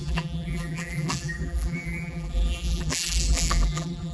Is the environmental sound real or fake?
fake